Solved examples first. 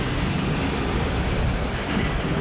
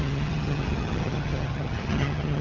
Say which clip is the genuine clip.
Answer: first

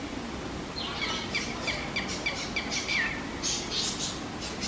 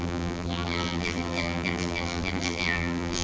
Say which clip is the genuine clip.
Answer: first